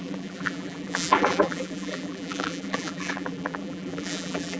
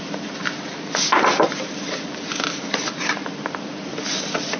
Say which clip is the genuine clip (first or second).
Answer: second